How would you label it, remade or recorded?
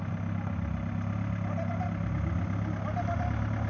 recorded